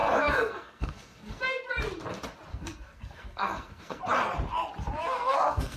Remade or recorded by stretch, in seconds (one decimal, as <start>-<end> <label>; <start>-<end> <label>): 0.0-1.7 remade; 1.7-2.5 recorded; 2.5-4.0 remade; 4.0-5.0 recorded; 5.0-5.8 remade